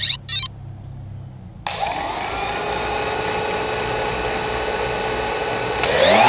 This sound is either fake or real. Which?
real